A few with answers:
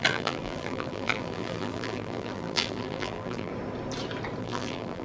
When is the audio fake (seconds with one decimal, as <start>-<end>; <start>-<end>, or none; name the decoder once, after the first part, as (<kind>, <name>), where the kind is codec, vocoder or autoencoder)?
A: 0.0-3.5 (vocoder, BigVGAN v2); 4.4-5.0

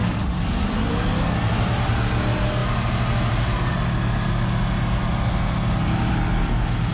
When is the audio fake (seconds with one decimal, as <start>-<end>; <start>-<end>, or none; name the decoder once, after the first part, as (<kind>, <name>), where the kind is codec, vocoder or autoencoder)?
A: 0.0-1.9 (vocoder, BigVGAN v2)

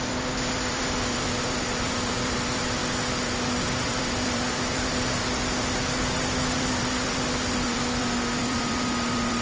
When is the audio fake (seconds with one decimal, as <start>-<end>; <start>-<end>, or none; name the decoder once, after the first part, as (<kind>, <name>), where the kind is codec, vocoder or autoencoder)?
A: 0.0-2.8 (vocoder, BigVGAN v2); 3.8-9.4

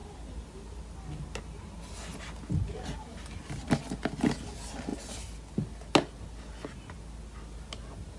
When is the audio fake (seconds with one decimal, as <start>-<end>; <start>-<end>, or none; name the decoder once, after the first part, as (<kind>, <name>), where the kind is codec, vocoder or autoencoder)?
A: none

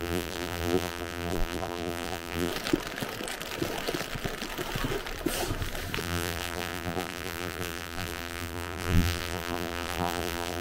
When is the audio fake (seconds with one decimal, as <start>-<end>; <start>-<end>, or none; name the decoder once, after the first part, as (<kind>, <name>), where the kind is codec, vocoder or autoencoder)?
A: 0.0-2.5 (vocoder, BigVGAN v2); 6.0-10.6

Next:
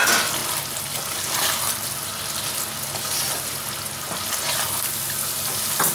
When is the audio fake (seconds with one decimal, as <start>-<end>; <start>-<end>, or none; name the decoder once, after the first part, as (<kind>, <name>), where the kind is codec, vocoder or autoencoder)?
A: none